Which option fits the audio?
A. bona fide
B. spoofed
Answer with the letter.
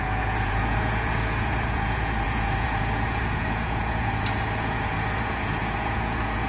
B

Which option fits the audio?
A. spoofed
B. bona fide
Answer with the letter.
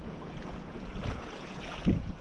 A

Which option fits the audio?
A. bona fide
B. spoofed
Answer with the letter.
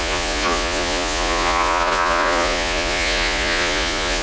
B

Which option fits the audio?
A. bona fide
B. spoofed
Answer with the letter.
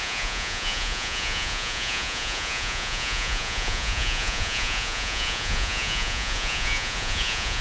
B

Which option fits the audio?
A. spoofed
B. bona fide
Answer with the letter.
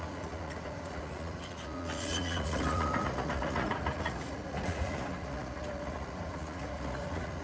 A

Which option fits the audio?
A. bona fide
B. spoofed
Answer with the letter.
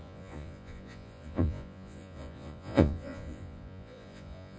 B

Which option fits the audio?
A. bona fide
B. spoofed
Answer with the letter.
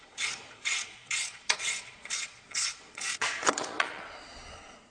B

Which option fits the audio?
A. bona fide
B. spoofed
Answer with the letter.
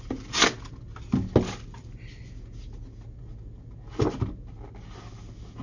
A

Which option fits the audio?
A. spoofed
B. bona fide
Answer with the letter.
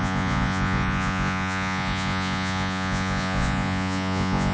A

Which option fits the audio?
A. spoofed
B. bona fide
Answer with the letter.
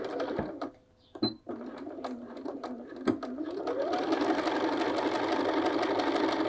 B